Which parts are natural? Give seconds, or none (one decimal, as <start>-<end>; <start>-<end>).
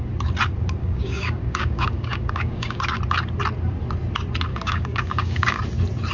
0.0-0.8; 2.8-4.5; 5.6-6.1